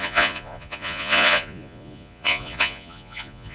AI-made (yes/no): yes